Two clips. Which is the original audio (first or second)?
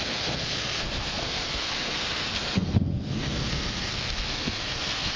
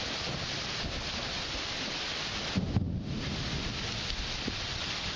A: second